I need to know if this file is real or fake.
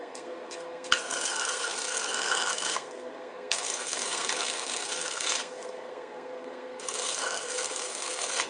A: fake